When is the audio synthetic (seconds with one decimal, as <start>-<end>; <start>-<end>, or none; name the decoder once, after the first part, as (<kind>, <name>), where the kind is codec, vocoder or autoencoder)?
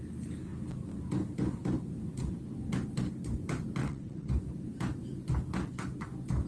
3.8-4.3 (vocoder, WaveNeXt)